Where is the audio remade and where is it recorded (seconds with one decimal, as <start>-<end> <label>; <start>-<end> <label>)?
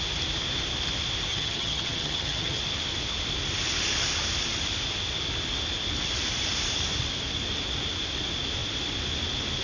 0.0-1.3 recorded; 1.3-2.6 remade; 2.6-9.6 recorded